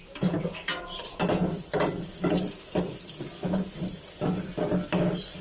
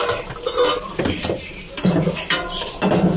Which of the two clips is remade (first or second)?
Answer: second